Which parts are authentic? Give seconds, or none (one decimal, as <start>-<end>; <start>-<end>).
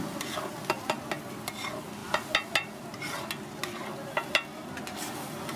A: 0.0-5.6